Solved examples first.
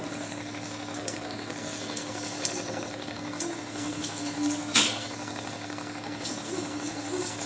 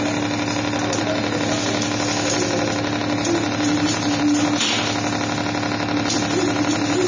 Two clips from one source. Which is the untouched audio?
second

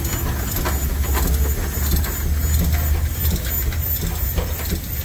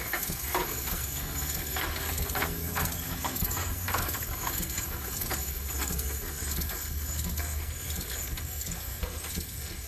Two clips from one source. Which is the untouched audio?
first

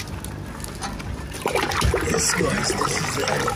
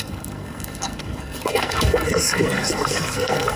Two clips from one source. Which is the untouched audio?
first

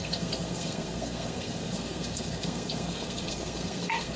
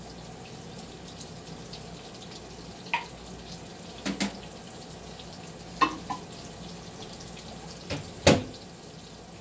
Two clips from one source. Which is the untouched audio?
second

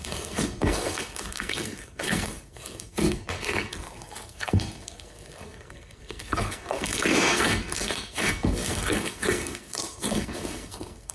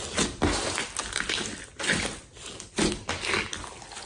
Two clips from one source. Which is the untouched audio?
second